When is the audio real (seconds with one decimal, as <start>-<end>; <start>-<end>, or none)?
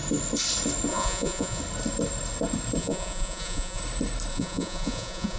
0.0-0.9; 1.6-2.8; 3.8-4.3